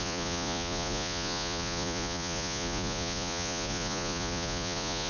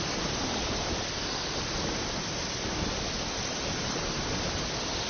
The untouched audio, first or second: second